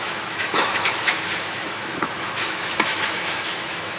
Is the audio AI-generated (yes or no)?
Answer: yes